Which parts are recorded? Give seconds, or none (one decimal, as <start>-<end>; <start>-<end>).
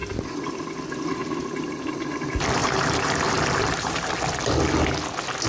0.0-2.6; 4.1-5.5